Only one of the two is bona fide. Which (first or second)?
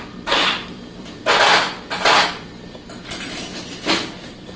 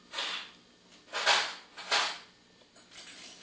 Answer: second